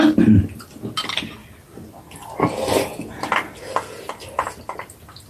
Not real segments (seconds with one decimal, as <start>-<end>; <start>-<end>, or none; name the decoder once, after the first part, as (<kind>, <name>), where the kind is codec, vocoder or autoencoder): none